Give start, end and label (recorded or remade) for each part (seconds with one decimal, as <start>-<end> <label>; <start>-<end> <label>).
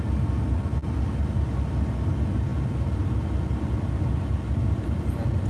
0.0-5.5 recorded